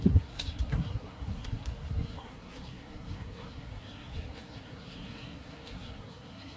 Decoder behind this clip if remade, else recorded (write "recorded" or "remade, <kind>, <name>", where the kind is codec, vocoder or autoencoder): remade, codec, SNAC